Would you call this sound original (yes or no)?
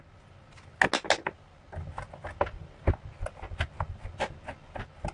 yes